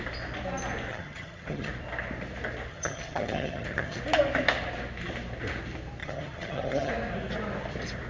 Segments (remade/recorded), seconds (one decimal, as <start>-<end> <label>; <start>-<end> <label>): 0.0-0.9 recorded; 0.9-1.7 remade; 1.7-2.7 recorded; 2.7-4.0 remade; 4.0-6.0 recorded; 6.0-6.9 remade; 6.9-8.1 recorded